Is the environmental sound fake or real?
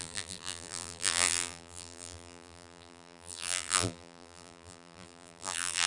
fake